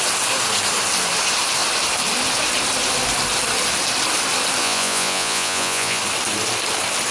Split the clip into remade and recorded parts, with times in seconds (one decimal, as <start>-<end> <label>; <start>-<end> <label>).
0.0-4.6 recorded; 4.6-6.0 remade; 6.0-7.1 recorded